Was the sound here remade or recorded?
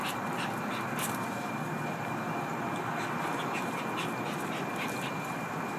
remade